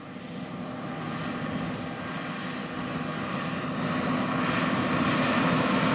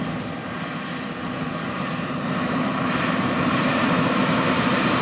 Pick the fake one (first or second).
second